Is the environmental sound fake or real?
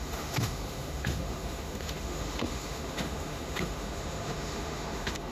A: fake